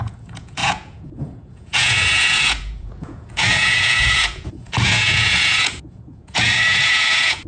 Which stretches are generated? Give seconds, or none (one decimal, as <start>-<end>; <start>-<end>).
0.0-7.5